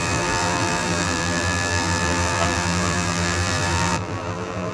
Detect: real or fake fake